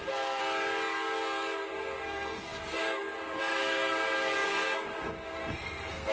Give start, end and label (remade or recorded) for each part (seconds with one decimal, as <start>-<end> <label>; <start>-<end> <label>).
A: 0.0-0.4 remade; 0.4-1.7 recorded; 1.7-6.1 remade